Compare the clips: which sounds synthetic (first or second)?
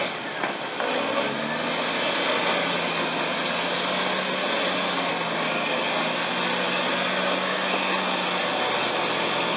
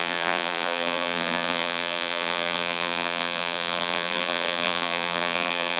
second